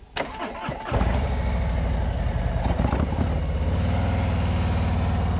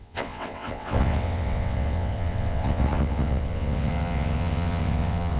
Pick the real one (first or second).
first